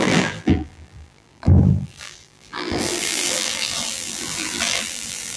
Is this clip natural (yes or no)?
no